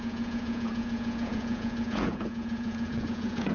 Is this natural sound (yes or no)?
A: no